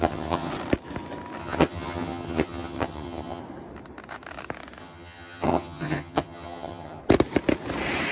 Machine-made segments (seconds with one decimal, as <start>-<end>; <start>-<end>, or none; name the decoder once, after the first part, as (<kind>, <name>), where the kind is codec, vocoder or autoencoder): 0.0-0.5 (vocoder, HiFi-GAN); 1.4-3.4; 4.8-7.0